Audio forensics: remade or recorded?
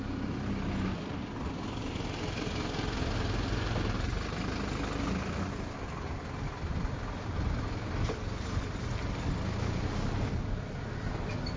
recorded